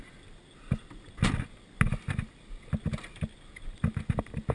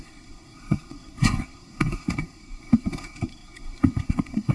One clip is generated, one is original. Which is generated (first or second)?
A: second